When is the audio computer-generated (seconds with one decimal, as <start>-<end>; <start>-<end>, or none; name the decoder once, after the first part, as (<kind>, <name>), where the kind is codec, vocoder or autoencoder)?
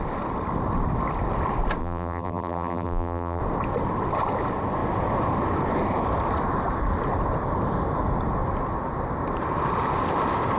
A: 1.8-3.4 (vocoder, BigVGAN v2)